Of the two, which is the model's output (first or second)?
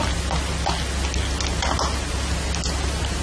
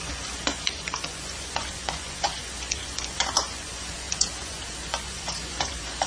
second